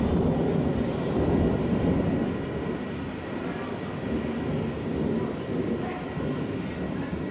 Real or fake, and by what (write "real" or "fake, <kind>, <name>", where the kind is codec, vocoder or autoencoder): real